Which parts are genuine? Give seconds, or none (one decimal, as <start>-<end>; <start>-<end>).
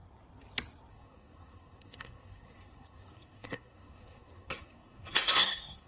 0.0-0.9